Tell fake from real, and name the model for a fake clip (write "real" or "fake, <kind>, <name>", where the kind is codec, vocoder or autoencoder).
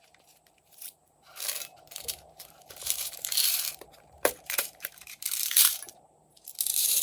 fake, vocoder, BigVGAN v2